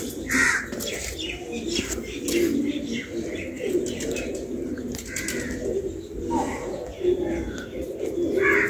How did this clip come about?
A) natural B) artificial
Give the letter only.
A